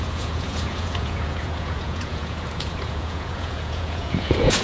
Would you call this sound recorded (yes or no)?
no